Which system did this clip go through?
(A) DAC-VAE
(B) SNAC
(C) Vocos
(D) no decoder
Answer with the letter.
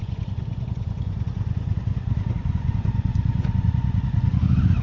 C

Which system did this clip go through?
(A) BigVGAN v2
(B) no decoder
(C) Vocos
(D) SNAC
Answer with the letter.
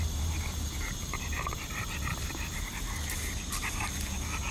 A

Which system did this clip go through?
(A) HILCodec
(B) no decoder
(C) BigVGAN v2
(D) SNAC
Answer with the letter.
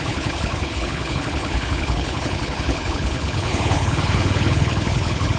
A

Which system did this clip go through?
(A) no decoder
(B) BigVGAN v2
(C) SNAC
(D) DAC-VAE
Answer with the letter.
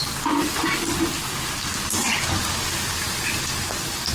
A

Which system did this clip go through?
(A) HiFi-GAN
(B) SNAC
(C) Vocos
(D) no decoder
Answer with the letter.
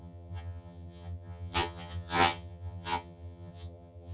A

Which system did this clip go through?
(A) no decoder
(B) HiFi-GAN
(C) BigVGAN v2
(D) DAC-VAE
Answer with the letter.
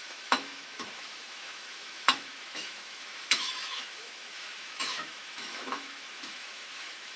D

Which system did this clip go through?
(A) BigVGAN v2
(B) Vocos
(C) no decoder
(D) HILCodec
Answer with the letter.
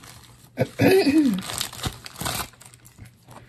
C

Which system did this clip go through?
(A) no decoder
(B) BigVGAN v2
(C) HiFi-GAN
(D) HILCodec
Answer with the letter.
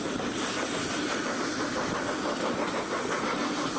A